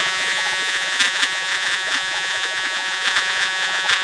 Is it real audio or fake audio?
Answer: fake